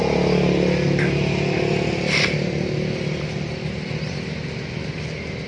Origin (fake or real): real